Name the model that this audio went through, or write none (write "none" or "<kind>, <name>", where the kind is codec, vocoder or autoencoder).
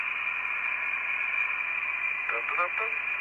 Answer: none